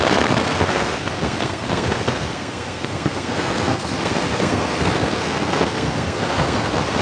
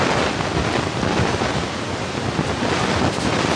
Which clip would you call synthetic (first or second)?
first